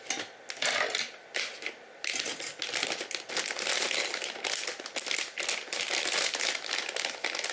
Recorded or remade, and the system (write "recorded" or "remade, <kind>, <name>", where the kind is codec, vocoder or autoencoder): recorded